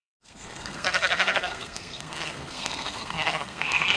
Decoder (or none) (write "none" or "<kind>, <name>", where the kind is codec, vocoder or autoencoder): codec, SNAC